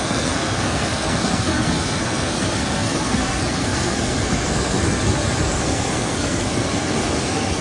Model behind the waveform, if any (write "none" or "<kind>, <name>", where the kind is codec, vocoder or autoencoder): codec, SNAC